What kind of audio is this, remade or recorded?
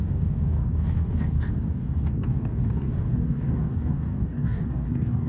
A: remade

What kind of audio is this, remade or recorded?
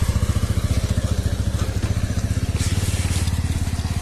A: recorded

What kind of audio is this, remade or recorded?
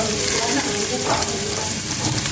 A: remade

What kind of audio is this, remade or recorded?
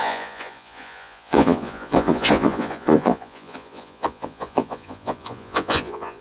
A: remade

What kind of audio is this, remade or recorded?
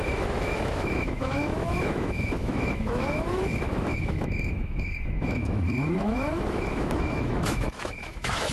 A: remade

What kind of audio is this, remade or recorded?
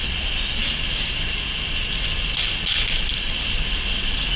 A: recorded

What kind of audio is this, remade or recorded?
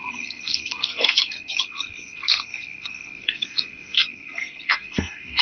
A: remade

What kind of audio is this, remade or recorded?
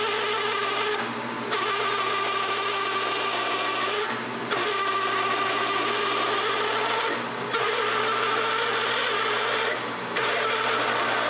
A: recorded